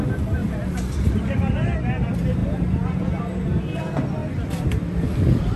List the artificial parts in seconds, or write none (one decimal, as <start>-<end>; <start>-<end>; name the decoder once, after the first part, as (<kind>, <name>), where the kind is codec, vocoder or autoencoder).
0.4-1.4 (vocoder, BigVGAN v2); 4.2-5.6